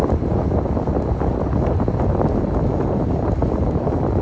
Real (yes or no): yes